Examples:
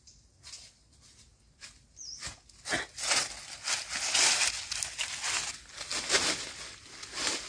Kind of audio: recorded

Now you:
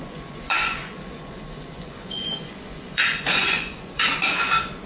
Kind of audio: remade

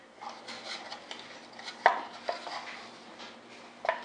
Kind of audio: recorded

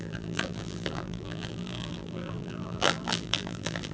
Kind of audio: remade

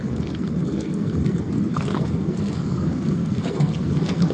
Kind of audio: remade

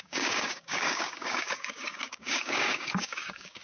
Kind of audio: remade